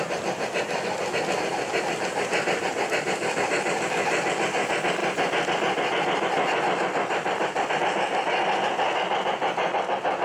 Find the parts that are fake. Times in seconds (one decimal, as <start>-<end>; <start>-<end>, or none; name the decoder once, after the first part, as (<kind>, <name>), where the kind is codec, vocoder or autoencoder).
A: none

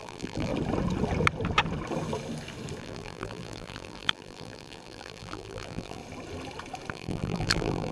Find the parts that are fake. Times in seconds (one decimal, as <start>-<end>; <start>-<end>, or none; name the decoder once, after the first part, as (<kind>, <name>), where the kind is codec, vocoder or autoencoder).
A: 0.0-0.5 (vocoder, BigVGAN v2); 2.8-6.0; 6.9-7.9